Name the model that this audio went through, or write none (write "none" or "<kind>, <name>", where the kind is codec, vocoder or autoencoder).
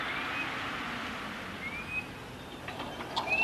none